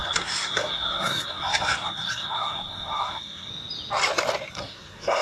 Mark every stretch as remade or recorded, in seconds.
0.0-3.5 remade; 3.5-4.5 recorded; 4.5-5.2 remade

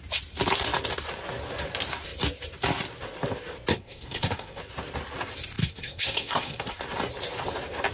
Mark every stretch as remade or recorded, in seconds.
0.0-3.7 recorded; 3.7-4.6 remade; 4.6-5.6 recorded; 5.6-6.7 remade; 6.7-7.9 recorded

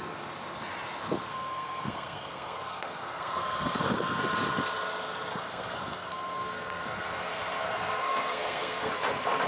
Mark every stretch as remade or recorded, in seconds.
0.0-1.3 recorded; 1.3-4.2 remade; 4.2-5.3 recorded; 5.3-8.9 remade; 8.9-9.5 recorded

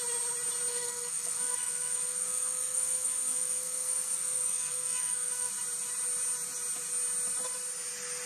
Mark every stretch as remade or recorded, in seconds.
0.0-0.7 recorded; 0.7-5.5 remade; 5.5-8.3 recorded

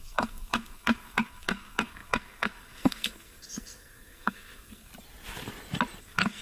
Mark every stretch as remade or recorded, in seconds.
0.0-4.9 remade; 4.9-6.0 recorded; 6.0-6.4 remade